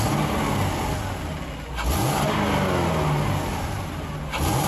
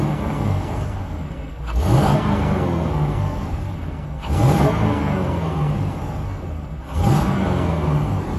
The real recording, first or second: first